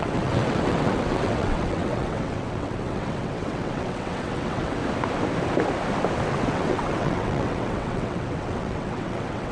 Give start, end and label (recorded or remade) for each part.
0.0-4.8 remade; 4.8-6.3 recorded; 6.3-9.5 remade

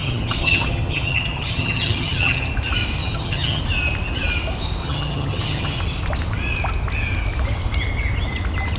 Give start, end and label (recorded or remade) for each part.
0.0-2.5 remade; 2.5-3.0 recorded; 3.0-3.6 remade; 3.6-4.8 recorded; 4.8-5.8 remade; 5.8-8.8 recorded

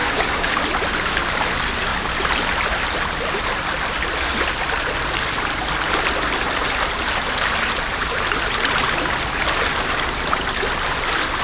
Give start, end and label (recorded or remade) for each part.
0.0-0.6 remade; 0.6-11.4 recorded

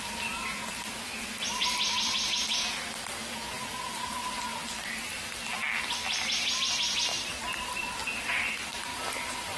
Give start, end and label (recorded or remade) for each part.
0.0-9.6 recorded